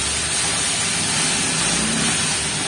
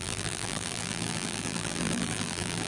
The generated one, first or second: second